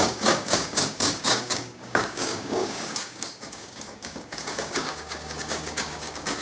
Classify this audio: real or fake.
fake